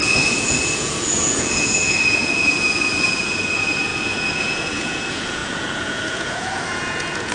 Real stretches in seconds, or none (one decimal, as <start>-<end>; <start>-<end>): none